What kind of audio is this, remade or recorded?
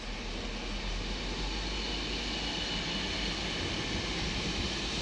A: recorded